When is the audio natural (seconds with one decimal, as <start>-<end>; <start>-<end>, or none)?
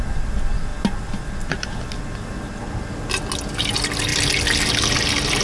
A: 0.0-5.4